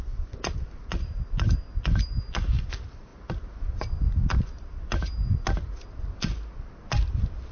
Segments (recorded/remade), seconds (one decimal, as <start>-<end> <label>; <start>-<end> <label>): 0.0-7.5 recorded